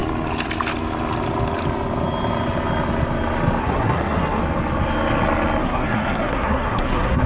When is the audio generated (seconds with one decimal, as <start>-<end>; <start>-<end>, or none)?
3.6-4.4; 5.6-7.3